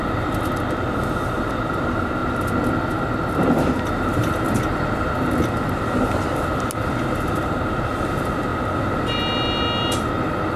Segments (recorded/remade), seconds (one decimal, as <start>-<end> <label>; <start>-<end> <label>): 0.0-10.6 recorded